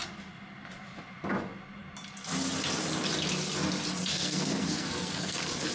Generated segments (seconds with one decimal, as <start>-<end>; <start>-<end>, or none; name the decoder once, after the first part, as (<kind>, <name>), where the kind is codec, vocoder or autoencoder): 4.1-5.7 (codec, SNAC)